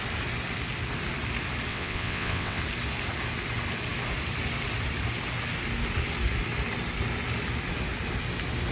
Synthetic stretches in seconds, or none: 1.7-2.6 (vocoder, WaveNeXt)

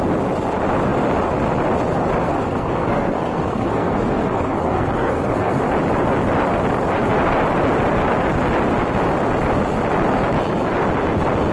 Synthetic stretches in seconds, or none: 2.2-5.6 (codec, SNAC)

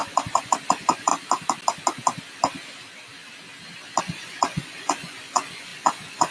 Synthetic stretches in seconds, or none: 0.0-1.1 (vocoder, Vocos); 4.0-6.3